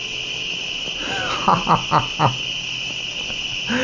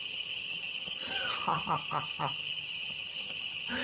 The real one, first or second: first